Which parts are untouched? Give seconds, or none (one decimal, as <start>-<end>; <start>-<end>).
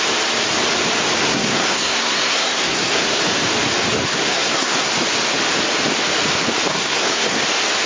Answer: 0.0-1.2; 3.2-4.0; 4.9-6.7; 7.4-7.9